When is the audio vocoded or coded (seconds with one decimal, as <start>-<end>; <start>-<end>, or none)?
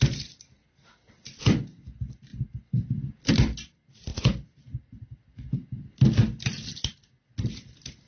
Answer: none